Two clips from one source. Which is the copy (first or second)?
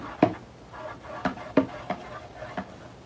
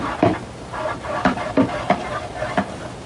second